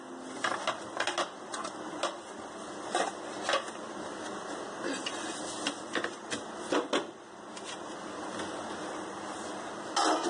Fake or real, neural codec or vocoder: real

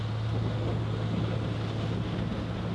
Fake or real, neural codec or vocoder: real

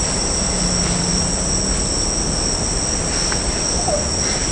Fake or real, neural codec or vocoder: real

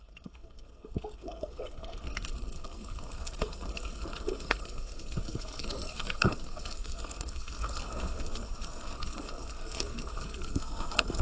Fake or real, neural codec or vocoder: fake, codec, SNAC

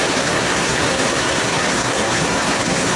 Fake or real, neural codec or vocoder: fake, codec, SNAC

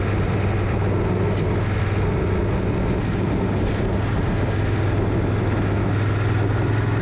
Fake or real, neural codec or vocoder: real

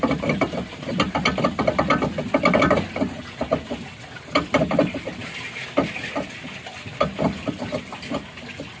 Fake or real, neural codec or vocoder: real